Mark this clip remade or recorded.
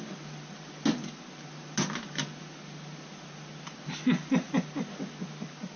recorded